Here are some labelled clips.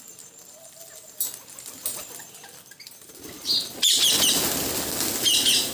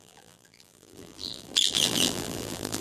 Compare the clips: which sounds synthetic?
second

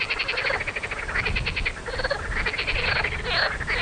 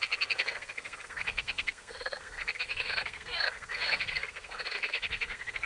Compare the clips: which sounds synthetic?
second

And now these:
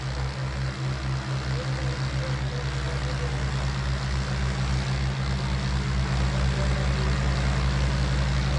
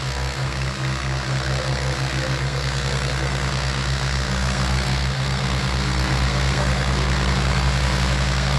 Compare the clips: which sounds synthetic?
second